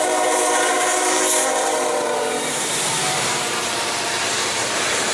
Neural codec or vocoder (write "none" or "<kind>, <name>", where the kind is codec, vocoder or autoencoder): vocoder, BigVGAN v2